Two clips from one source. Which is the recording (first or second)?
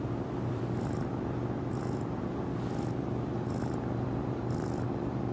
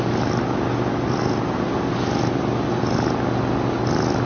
second